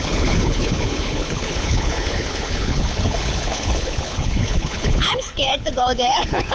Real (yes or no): no